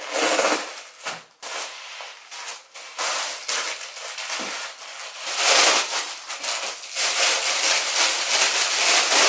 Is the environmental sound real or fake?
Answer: real